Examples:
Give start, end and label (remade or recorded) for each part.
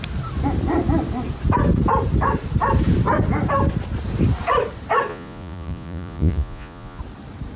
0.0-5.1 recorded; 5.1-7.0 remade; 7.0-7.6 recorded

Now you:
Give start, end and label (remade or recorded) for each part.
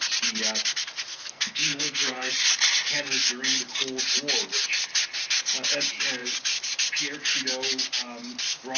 0.0-1.1 recorded; 1.1-2.3 remade; 2.3-8.8 recorded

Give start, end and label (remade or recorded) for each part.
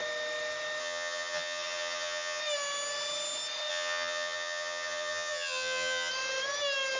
0.0-0.8 recorded; 0.8-2.4 remade; 2.4-3.7 recorded; 3.7-6.1 remade; 6.1-7.0 recorded